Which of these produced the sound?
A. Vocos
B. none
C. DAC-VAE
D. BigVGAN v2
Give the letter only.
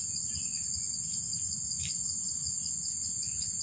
B